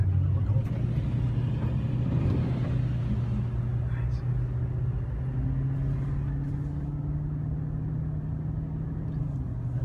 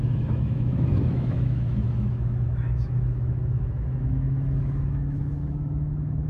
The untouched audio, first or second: first